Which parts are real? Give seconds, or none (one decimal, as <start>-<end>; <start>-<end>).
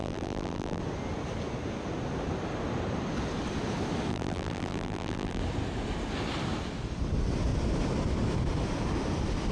0.8-4.1; 5.4-9.5